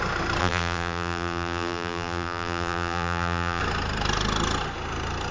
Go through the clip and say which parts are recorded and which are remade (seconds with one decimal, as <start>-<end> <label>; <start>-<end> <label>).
0.0-0.4 recorded; 0.4-3.6 remade; 3.6-5.3 recorded

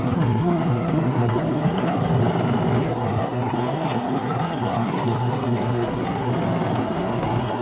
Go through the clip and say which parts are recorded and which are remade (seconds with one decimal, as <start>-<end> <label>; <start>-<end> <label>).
0.0-2.2 remade; 2.2-2.8 recorded; 2.8-6.3 remade; 6.3-6.8 recorded; 6.8-7.6 remade

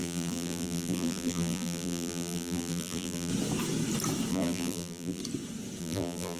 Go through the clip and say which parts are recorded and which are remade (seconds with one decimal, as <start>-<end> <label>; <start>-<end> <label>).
0.0-3.3 remade; 3.3-4.3 recorded; 4.3-5.2 remade; 5.2-5.8 recorded; 5.8-6.4 remade

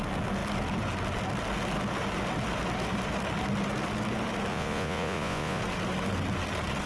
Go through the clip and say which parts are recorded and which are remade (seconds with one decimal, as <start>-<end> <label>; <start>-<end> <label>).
0.0-4.5 recorded; 4.5-5.6 remade; 5.6-6.9 recorded